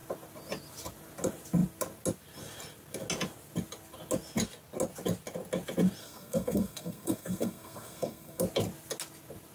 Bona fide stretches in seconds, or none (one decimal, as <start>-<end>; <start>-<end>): 0.0-6.0; 8.4-9.5